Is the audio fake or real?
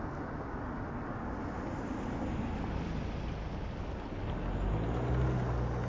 real